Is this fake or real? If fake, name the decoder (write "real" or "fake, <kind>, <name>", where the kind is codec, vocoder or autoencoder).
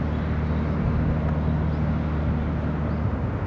real